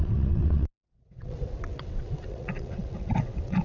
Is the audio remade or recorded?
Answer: remade